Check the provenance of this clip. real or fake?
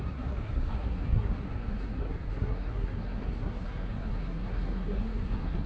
fake